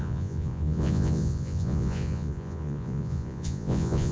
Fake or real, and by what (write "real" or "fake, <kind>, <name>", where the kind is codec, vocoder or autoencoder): fake, vocoder, Vocos